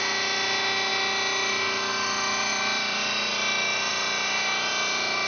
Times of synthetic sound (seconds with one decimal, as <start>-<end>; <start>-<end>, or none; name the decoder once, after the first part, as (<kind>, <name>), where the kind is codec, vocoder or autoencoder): 2.5-3.3 (vocoder, BigVGAN v2); 3.9-4.7